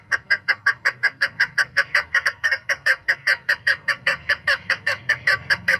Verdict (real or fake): fake